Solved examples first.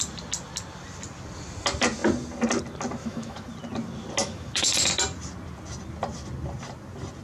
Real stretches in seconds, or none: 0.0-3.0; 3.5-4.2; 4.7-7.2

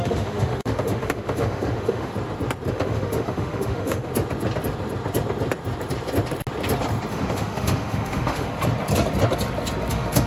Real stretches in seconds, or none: 2.1-2.7; 4.1-7.1; 8.5-9.9

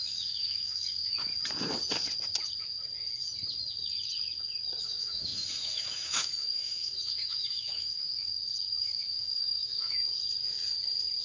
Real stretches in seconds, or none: 1.3-4.8; 8.3-8.8; 10.0-11.2

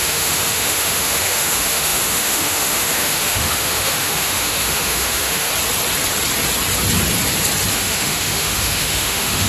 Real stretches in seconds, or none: 5.5-7.7

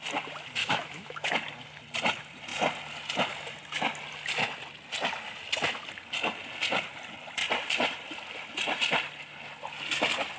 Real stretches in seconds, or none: 0.0-0.6; 1.3-10.4

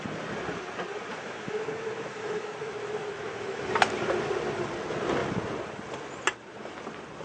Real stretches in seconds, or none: 0.0-1.1; 3.6-7.2

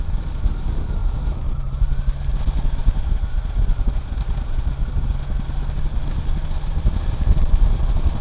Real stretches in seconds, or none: 0.0-8.2

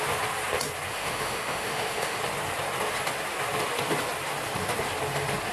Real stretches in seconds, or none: 0.0-0.9; 2.2-5.5